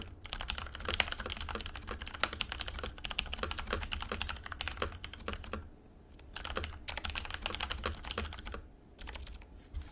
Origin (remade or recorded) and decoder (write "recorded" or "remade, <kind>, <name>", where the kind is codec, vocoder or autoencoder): recorded